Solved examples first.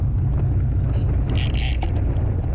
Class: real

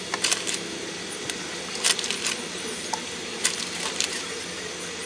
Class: real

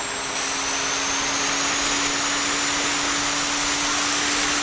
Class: real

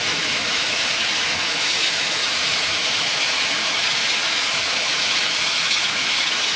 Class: fake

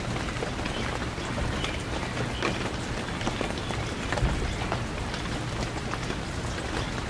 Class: real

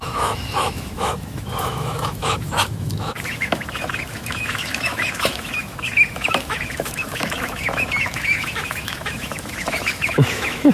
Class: fake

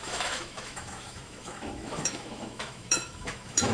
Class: fake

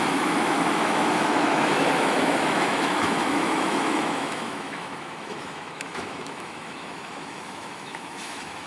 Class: fake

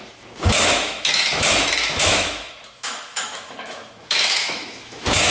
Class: fake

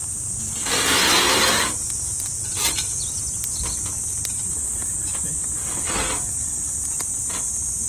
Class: real